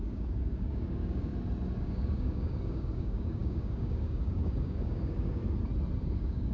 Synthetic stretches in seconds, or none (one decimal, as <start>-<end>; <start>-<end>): 0.0-1.3; 1.8-5.4; 6.0-6.5